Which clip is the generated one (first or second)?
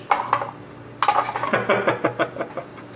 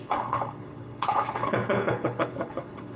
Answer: second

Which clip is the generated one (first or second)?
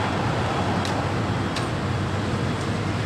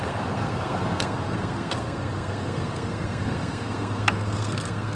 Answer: second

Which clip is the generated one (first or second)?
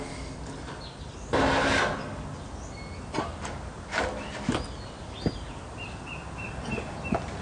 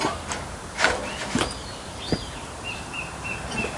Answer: second